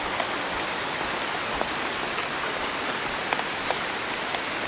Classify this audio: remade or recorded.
recorded